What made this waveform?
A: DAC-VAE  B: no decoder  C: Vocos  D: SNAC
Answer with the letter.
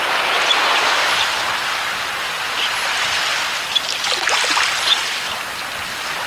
B